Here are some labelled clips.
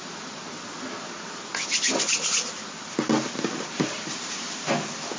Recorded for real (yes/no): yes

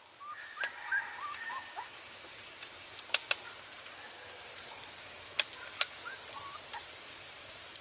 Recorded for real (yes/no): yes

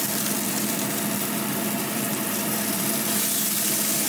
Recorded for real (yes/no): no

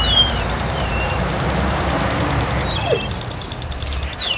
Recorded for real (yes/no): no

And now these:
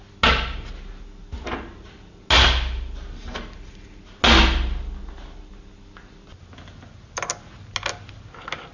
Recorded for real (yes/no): yes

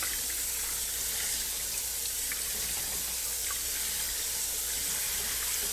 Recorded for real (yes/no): yes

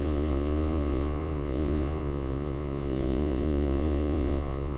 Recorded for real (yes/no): no